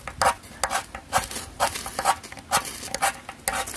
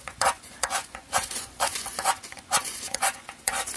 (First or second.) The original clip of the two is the first